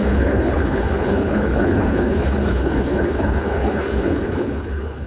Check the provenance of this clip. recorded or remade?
remade